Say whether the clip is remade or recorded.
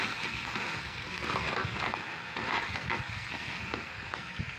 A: remade